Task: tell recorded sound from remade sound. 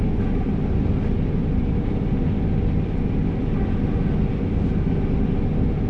recorded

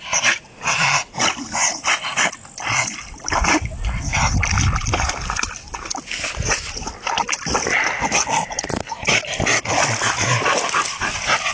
recorded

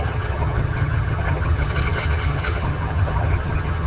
remade